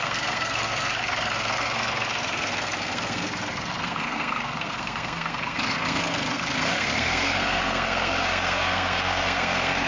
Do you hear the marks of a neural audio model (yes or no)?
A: yes